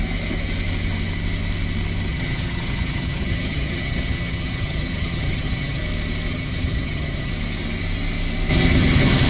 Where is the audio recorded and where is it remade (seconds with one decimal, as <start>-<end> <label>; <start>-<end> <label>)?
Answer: 0.0-2.1 recorded; 2.1-5.8 remade; 5.8-6.3 recorded; 6.3-7.3 remade; 7.3-8.5 recorded; 8.5-9.3 remade